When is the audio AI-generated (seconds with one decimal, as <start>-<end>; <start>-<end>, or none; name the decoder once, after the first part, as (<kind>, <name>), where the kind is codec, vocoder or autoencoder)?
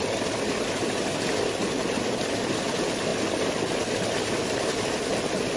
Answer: none